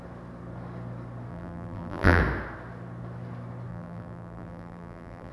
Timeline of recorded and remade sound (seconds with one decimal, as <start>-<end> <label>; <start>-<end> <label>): 0.0-1.3 recorded; 1.3-2.2 remade; 2.2-3.7 recorded; 3.7-5.3 remade